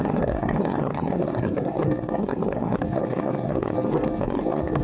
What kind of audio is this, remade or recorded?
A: remade